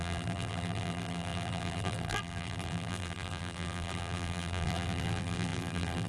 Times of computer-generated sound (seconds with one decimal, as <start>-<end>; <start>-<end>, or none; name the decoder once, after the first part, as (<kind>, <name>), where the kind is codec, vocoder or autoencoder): 0.0-6.1 (vocoder, BigVGAN v2)